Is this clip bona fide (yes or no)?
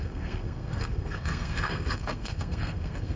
no